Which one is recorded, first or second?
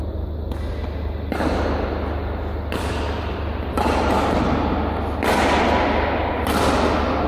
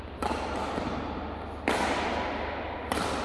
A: first